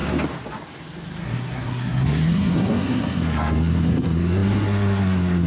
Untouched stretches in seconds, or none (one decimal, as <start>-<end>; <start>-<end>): 0.0-1.2